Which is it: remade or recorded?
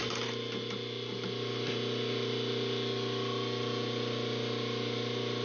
recorded